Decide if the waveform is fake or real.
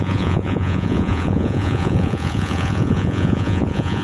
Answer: fake